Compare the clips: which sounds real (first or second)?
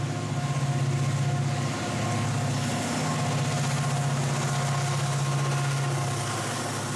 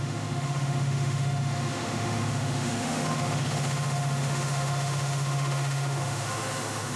first